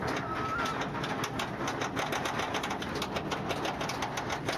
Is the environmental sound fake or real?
real